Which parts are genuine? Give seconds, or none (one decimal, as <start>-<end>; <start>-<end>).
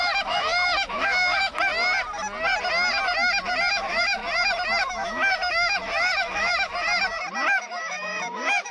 1.7-3.7; 4.2-4.8; 6.7-7.5